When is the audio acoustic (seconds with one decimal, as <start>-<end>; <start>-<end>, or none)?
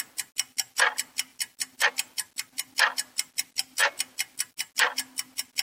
0.0-5.6